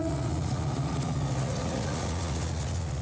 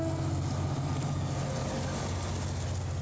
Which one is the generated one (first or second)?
first